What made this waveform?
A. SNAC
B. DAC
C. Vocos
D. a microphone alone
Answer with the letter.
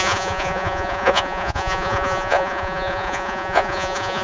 C